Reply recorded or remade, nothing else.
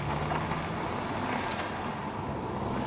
recorded